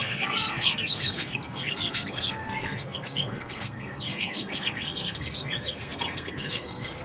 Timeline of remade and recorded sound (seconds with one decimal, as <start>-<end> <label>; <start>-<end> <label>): 0.0-7.0 remade